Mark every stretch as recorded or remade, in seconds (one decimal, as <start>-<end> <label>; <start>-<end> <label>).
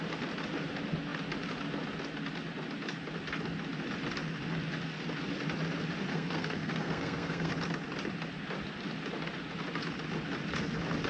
0.0-6.1 recorded; 6.1-7.5 remade; 7.5-11.1 recorded